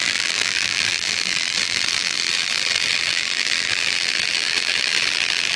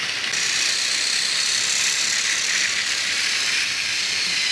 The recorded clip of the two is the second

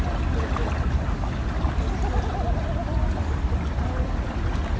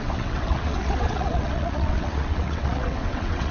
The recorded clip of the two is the first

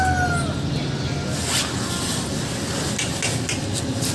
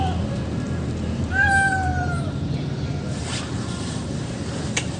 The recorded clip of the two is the first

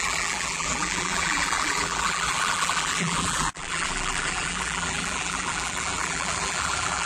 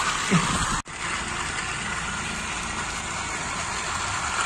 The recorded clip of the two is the second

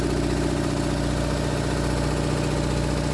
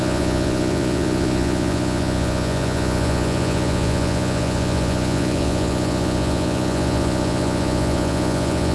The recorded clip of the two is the first